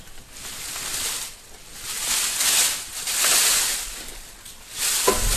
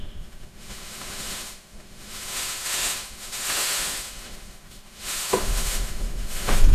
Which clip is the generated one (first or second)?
second